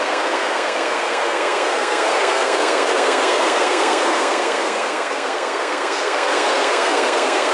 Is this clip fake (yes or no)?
yes